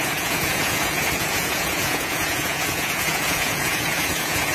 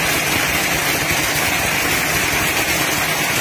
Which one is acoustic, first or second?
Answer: second